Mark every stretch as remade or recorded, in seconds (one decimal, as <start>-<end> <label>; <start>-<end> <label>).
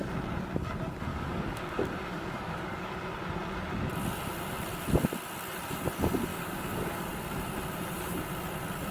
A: 0.0-1.1 recorded; 1.1-2.9 remade; 2.9-6.3 recorded; 6.3-7.1 remade; 7.1-8.9 recorded